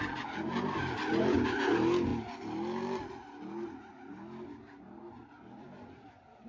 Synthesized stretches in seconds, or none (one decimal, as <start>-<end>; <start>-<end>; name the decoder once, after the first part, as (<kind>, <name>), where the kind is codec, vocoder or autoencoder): none